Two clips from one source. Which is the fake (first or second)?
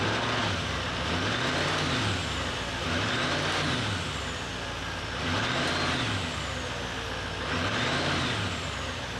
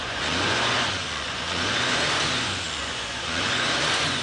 second